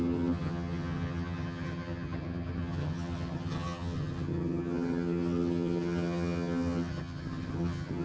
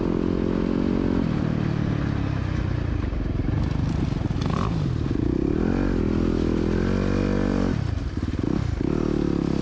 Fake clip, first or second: first